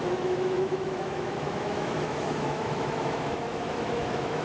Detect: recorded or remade remade